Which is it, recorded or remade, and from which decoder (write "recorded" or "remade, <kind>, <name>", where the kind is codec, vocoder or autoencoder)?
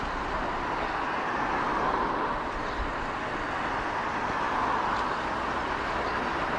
recorded